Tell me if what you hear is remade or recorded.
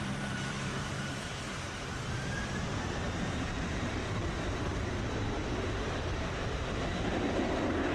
remade